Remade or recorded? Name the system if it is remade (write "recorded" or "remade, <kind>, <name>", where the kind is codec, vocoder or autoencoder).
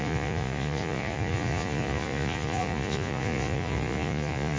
remade, vocoder, Vocos